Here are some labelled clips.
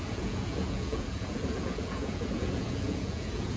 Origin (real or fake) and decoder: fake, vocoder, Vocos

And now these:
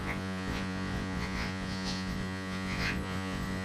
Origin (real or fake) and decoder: fake, vocoder, Vocos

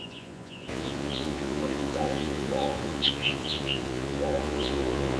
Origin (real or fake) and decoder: fake, vocoder, Vocos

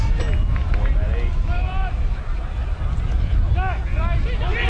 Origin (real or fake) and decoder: real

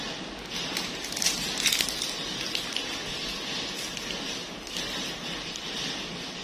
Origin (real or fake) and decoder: real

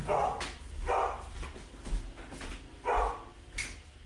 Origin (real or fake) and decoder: real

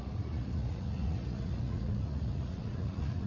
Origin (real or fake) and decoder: fake, vocoder, Vocos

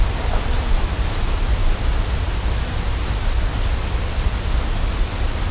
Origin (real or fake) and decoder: real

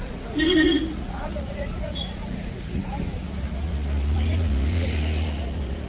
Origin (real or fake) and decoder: fake, vocoder, Vocos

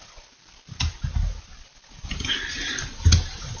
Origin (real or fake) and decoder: real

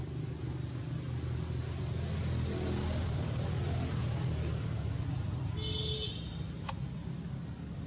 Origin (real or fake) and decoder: real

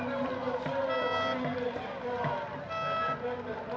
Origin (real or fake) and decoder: real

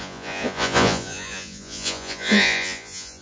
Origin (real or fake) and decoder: fake, vocoder, Vocos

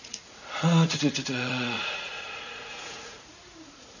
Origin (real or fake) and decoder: fake, vocoder, Vocos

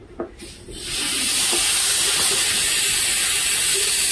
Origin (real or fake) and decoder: real